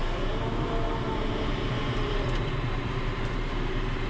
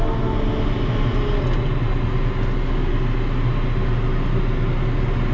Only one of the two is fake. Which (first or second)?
first